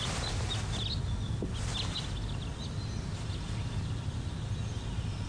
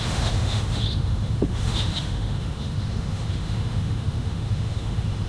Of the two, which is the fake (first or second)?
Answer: second